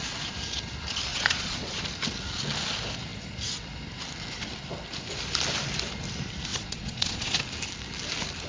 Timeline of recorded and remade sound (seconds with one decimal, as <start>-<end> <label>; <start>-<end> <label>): 0.0-1.1 recorded; 1.1-1.8 remade; 1.8-6.5 recorded; 6.5-7.4 remade; 7.4-8.5 recorded